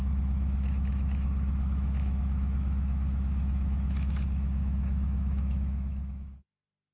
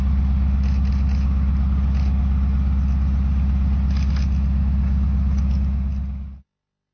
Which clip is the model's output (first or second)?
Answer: first